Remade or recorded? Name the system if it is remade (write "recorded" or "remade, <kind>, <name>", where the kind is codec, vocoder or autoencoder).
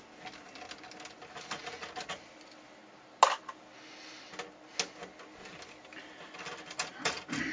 recorded